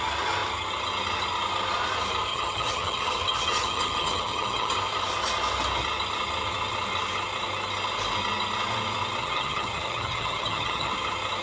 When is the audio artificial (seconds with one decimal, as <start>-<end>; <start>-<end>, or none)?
2.3-4.7; 9.2-10.9